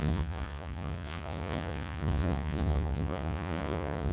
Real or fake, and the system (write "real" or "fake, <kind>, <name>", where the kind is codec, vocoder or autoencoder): fake, vocoder, Vocos